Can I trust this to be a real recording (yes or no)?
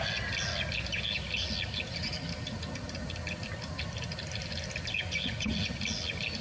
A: yes